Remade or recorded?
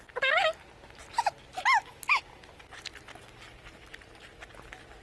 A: recorded